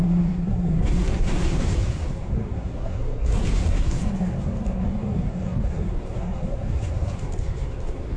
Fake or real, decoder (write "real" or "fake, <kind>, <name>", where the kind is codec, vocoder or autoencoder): fake, codec, SNAC